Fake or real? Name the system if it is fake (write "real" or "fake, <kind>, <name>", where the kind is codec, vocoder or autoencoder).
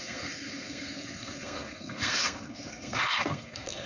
fake, codec, SNAC